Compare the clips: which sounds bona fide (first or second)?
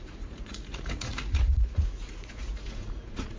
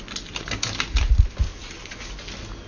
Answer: second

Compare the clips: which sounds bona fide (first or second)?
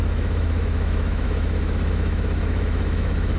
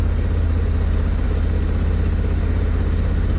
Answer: second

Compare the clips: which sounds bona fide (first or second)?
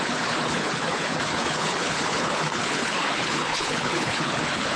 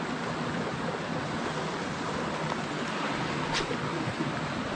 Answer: second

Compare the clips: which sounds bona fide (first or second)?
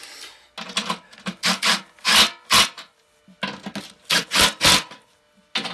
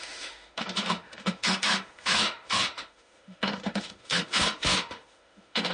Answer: first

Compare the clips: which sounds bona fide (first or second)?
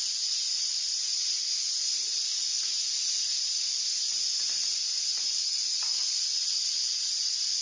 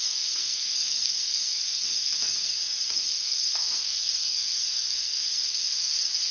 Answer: first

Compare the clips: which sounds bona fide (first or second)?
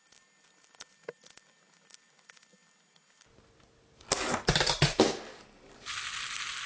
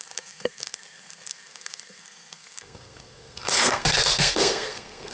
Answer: first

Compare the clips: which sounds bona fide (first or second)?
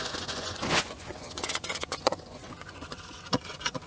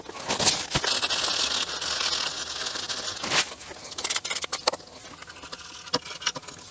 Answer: second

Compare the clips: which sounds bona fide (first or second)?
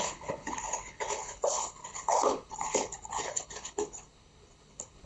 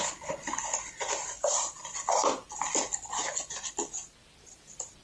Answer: second